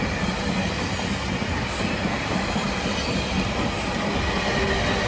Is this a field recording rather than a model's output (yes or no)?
yes